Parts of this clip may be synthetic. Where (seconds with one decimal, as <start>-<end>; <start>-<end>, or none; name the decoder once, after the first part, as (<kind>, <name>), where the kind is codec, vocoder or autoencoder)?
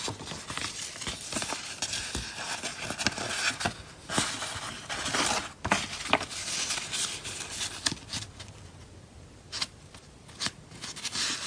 none